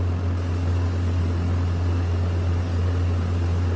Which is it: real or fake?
real